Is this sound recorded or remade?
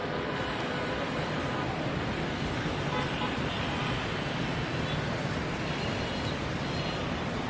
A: remade